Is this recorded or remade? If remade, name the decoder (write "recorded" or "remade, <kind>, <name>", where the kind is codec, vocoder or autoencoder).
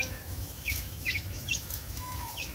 remade, autoencoder, DAC-VAE